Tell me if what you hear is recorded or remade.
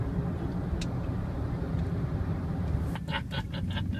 recorded